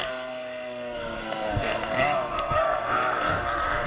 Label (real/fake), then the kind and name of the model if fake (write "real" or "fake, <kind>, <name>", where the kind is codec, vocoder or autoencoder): fake, codec, SNAC